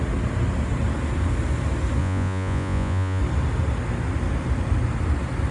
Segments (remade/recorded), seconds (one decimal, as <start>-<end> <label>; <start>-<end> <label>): 0.0-2.0 recorded; 2.0-3.2 remade; 3.2-5.5 recorded

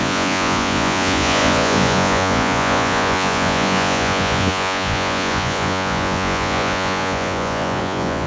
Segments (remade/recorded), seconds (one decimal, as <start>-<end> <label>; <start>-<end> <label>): 0.0-8.3 remade

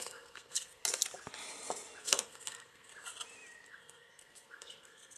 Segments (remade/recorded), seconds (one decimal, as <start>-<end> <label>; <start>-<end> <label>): 0.0-0.8 remade; 0.8-2.0 recorded; 2.0-2.9 remade; 2.9-3.7 recorded; 3.7-5.2 remade

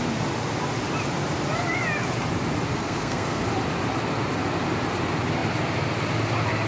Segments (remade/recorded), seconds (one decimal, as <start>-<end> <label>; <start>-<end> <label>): 0.0-2.7 recorded; 2.7-3.4 remade; 3.4-6.7 recorded

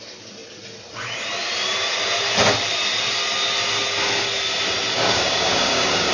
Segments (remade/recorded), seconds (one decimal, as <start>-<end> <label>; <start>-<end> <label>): 0.0-4.9 recorded; 4.9-6.1 remade

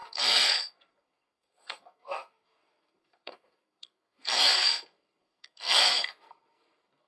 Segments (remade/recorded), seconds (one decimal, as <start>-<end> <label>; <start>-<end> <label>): 0.0-7.1 remade